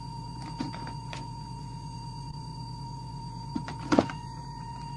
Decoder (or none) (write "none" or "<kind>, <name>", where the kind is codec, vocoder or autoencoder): vocoder, Vocos